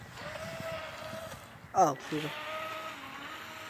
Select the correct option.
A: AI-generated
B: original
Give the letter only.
B